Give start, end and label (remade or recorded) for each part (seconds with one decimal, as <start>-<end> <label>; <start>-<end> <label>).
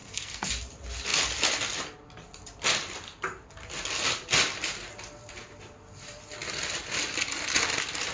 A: 0.0-0.5 remade; 0.5-8.1 recorded